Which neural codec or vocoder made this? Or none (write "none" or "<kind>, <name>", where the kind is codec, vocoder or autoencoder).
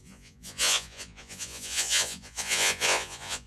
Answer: vocoder, Vocos